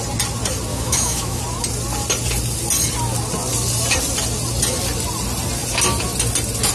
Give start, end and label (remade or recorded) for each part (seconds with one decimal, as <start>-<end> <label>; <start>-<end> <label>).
0.0-0.7 recorded; 0.7-1.4 remade; 1.4-6.7 recorded